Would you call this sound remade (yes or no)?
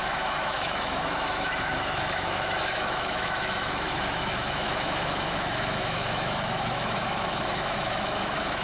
yes